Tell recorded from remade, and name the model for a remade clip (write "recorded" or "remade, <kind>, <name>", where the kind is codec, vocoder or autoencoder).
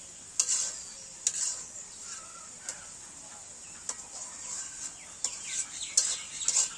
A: recorded